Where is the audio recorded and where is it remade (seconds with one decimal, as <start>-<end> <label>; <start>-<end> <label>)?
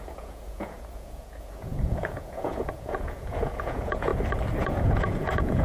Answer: 0.0-4.1 remade; 4.1-4.6 recorded; 4.6-5.6 remade